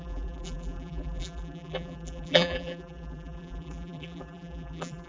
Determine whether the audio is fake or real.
fake